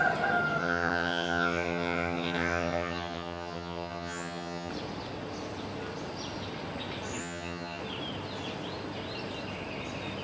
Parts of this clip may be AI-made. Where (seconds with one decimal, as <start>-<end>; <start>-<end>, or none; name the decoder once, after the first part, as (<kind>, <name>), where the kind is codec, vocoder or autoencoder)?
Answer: 0.6-4.7 (vocoder, HiFi-GAN); 7.2-7.8